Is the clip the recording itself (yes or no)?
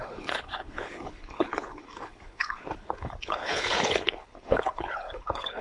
no